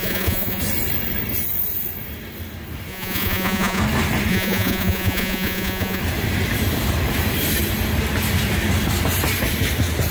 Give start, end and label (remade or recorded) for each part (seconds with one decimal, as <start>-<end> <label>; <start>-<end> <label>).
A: 0.0-0.6 remade; 0.6-2.9 recorded; 2.9-3.8 remade; 3.8-4.3 recorded; 4.3-6.0 remade; 6.0-10.1 recorded